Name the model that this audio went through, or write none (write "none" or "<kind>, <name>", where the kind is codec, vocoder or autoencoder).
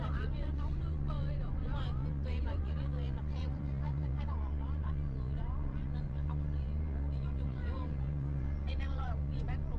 vocoder, Vocos